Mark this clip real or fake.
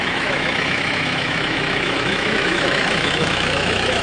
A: fake